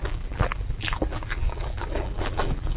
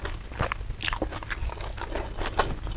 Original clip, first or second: second